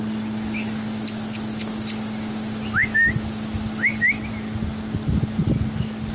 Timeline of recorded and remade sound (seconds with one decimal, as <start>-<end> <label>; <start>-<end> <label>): 0.0-6.1 recorded